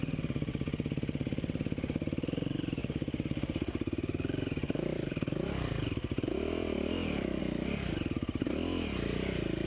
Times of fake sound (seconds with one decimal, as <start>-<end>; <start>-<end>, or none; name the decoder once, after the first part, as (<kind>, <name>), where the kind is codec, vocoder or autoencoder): 2.8-7.4 (vocoder, BigVGAN v2)